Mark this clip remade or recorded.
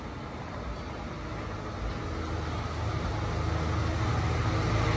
recorded